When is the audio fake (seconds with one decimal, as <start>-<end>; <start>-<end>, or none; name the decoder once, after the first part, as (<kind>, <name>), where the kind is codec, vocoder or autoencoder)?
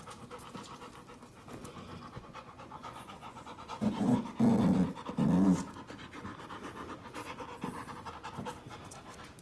1.6-4.2 (vocoder, Vocos)